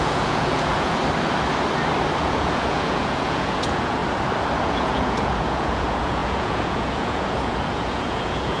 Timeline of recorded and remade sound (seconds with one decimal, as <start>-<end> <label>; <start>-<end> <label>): 0.0-1.0 remade; 1.0-2.2 recorded; 2.2-4.0 remade; 4.0-4.6 recorded; 4.6-8.6 remade